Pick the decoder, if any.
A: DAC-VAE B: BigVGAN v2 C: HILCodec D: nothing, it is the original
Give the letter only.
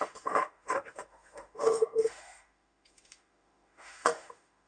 A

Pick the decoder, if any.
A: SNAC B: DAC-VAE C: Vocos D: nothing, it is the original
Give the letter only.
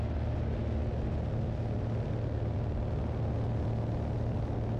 D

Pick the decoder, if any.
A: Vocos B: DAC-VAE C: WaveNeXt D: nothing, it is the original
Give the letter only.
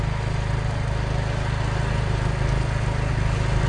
D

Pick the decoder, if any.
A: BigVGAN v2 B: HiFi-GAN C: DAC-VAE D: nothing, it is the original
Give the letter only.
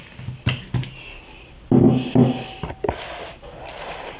D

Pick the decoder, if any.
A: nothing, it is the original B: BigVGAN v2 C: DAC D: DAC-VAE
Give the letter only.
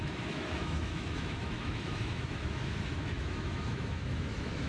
D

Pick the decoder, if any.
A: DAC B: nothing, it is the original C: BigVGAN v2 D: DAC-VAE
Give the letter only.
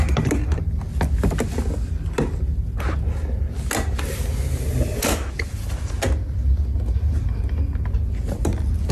B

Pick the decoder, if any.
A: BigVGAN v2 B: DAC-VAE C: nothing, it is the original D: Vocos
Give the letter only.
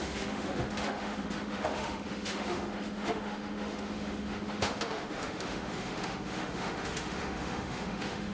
B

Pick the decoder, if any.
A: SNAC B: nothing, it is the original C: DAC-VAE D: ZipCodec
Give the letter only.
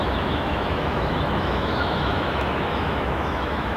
C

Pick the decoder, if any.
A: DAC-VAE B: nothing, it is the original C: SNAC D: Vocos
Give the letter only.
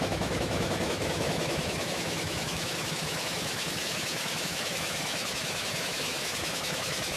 A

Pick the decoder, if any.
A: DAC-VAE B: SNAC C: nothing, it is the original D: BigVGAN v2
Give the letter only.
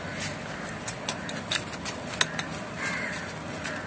C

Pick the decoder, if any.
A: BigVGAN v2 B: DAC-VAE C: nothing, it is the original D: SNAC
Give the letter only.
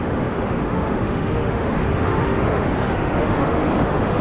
B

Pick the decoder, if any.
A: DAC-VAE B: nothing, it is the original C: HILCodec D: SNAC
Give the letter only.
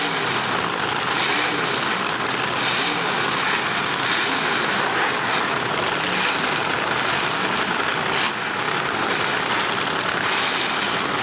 B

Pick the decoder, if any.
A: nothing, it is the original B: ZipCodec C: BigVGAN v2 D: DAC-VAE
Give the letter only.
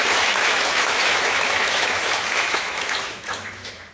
D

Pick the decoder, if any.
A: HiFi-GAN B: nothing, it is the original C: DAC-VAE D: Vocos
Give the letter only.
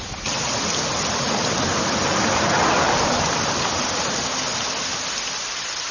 B